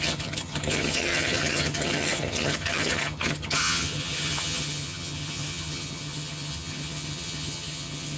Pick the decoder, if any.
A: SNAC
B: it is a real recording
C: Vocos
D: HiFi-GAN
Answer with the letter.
D